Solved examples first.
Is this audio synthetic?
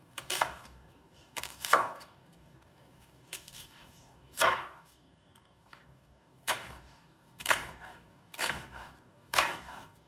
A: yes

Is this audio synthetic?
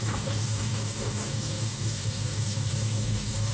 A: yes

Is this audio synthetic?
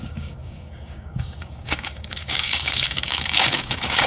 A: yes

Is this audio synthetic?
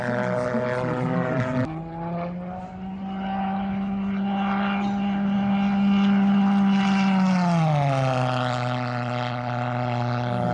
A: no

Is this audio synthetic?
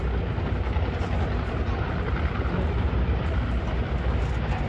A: no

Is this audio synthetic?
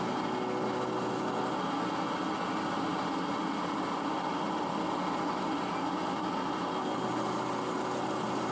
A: no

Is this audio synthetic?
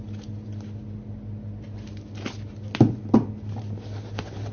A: no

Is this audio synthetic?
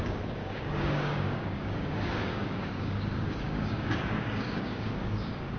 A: yes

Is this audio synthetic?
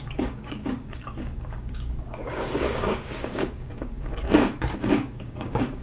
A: yes